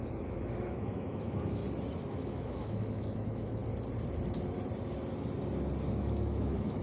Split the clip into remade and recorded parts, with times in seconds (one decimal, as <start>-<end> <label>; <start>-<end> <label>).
0.0-1.6 remade; 1.6-2.1 recorded; 2.1-3.6 remade; 3.6-5.9 recorded; 5.9-6.8 remade